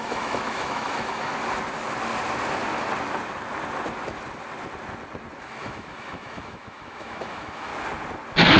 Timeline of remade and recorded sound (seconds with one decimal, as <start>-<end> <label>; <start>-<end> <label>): 0.0-1.3 remade; 1.3-5.4 recorded; 5.4-7.7 remade; 7.7-8.6 recorded